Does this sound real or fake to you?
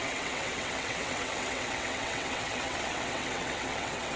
fake